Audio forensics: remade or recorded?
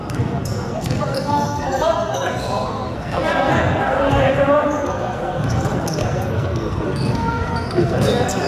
remade